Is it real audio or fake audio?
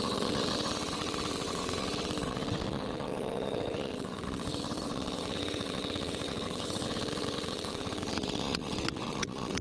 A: fake